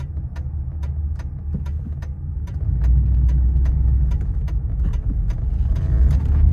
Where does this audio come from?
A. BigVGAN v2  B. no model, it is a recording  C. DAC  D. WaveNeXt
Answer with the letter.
B